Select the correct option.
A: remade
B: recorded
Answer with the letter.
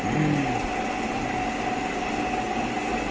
B